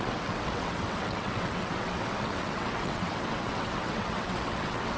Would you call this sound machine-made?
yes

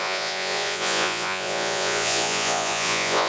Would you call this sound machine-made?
yes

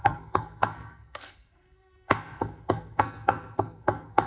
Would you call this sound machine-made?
yes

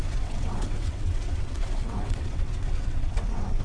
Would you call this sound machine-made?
yes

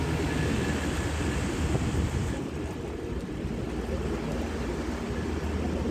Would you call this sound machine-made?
no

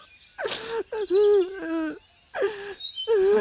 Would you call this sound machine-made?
no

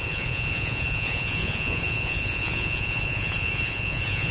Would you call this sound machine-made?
yes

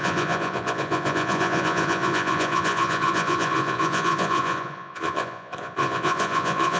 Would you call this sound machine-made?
yes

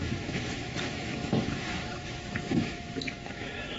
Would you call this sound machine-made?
yes